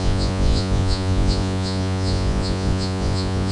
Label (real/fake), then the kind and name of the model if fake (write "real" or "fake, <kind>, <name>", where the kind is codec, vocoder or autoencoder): fake, vocoder, Vocos